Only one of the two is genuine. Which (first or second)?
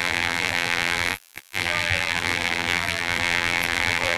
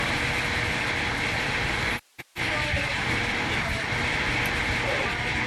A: second